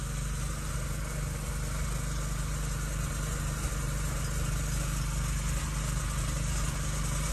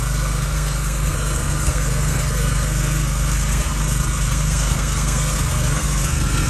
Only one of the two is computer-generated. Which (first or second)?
second